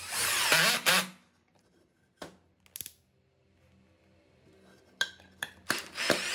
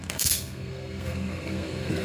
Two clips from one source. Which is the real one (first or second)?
first